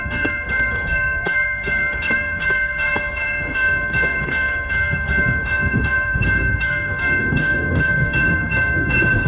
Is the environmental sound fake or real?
fake